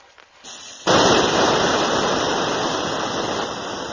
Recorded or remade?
recorded